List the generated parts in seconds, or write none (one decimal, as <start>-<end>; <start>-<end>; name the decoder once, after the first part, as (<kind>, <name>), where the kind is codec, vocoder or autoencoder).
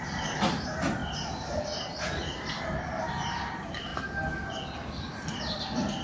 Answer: none